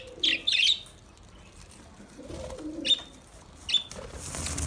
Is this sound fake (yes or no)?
no